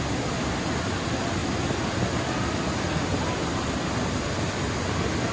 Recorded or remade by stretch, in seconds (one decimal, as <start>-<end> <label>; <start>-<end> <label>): 0.0-5.3 recorded